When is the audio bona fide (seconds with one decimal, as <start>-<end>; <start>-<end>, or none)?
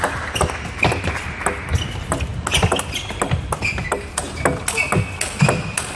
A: 0.0-6.0